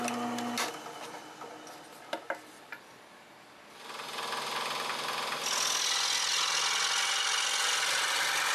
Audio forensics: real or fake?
real